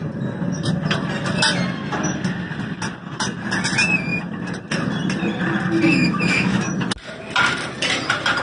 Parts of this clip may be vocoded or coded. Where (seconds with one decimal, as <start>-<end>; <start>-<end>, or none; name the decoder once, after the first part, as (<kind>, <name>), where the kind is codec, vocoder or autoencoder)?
5.9-6.7 (autoencoder, DAC-VAE)